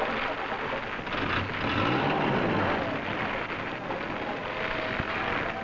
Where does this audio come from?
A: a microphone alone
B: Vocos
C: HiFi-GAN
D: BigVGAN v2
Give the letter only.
A